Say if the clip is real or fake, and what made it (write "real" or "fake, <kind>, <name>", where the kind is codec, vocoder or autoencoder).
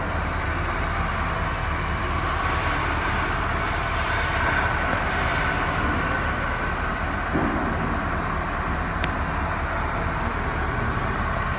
real